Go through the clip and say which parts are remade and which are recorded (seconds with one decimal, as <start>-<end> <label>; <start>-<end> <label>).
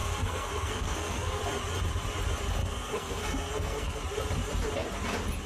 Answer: 0.0-1.4 remade; 1.4-2.6 recorded; 2.6-4.0 remade; 4.0-5.5 recorded